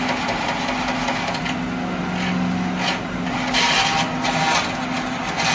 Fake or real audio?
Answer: real